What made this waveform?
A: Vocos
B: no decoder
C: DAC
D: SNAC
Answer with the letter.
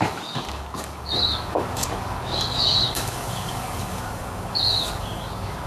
C